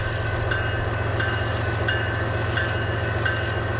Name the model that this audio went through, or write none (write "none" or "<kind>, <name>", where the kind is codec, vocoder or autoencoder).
none